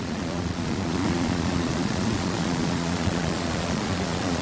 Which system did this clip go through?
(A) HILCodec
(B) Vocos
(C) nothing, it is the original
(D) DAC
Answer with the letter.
B